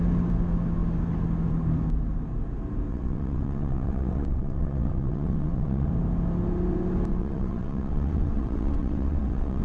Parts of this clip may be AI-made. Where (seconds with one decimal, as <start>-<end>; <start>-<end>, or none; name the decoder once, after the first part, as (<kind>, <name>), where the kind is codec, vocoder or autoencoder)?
2.9-5.9 (vocoder, WaveNeXt); 7.1-9.6